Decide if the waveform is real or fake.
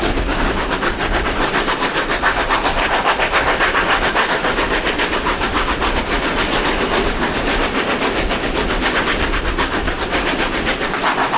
real